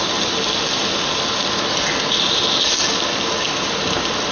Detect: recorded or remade recorded